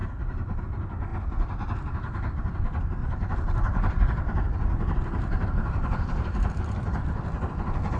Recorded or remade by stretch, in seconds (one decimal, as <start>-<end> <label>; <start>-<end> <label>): 0.0-0.6 remade; 0.6-3.0 recorded; 3.0-7.0 remade; 7.0-8.0 recorded